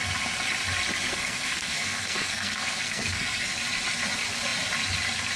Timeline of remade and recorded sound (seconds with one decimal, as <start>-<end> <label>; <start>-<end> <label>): 0.0-1.1 recorded; 1.1-3.5 remade; 3.5-5.4 recorded